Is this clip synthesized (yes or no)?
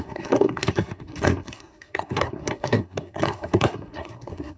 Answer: yes